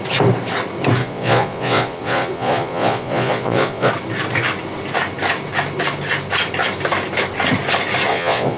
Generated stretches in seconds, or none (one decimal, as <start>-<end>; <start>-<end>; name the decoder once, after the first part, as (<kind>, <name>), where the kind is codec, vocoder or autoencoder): 1.0-3.9 (vocoder, Vocos); 8.1-8.6